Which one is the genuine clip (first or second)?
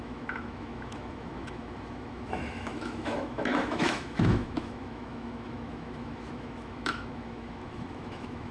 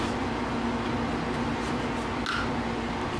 second